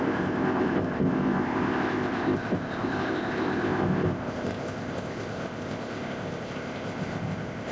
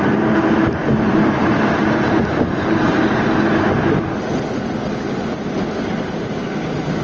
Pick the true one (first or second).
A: second